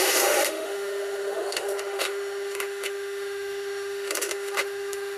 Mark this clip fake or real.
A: fake